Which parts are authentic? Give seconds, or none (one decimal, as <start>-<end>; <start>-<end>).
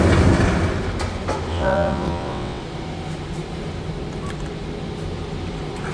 0.0-1.5; 2.6-5.9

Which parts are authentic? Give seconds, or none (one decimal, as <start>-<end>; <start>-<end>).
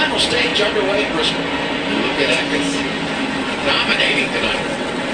0.0-3.9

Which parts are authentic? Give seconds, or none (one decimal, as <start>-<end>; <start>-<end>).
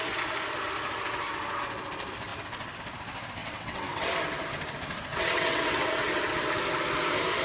0.0-3.4; 4.0-5.1; 6.2-7.4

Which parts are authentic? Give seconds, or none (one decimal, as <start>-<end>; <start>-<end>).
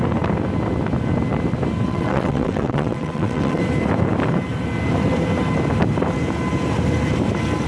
0.0-1.9; 3.6-7.7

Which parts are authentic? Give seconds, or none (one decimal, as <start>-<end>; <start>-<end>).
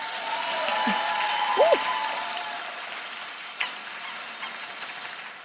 0.0-5.4